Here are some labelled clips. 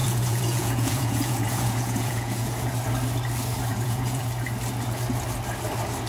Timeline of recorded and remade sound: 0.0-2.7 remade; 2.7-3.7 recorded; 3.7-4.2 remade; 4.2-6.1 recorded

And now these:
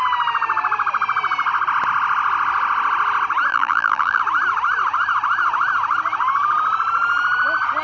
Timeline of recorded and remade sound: 0.0-3.5 recorded; 3.5-4.2 remade; 4.2-7.8 recorded